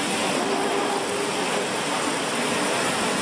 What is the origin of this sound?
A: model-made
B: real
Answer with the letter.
B